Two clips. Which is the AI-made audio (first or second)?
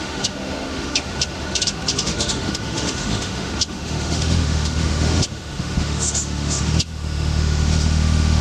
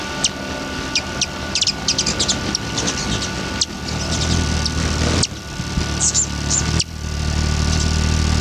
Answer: first